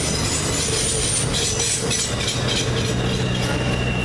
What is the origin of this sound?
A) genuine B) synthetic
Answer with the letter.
A